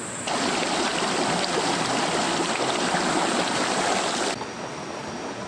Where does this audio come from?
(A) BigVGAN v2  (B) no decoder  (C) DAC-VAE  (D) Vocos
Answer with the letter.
B